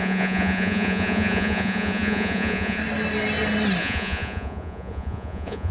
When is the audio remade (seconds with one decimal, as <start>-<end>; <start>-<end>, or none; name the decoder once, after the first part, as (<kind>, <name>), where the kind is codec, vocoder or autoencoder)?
0.0-2.8 (vocoder, Vocos); 3.8-5.7